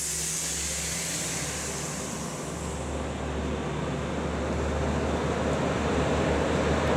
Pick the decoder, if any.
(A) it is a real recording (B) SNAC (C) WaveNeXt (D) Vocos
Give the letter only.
A